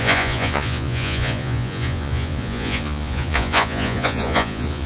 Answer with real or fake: fake